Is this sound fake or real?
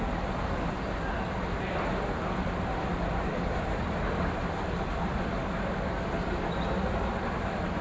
real